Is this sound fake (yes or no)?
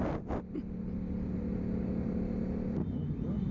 no